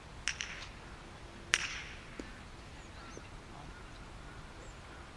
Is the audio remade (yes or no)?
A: no